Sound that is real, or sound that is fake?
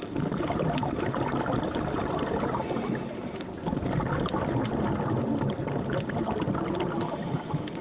real